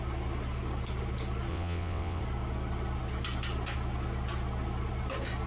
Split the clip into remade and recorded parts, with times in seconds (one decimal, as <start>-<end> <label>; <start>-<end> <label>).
0.0-1.5 recorded; 1.5-2.2 remade; 2.2-5.5 recorded